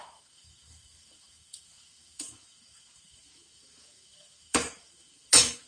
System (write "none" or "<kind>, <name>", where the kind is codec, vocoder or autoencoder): autoencoder, DAC-VAE